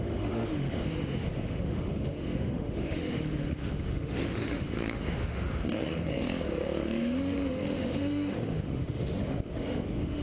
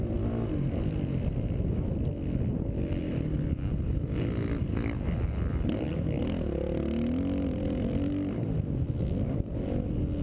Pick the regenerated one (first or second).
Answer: first